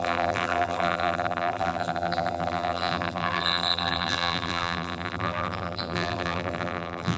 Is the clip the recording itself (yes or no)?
no